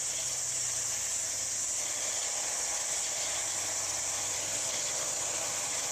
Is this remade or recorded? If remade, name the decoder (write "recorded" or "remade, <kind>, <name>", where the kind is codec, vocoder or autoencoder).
recorded